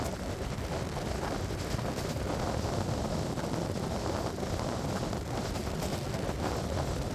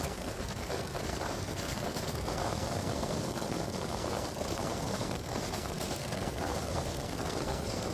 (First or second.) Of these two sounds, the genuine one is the first